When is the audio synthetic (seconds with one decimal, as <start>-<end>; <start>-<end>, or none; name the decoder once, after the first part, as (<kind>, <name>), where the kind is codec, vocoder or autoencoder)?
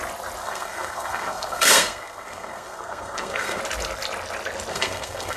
0.4-3.6 (codec, SNAC); 4.7-5.4